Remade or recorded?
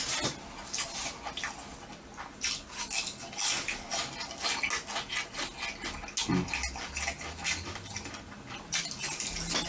recorded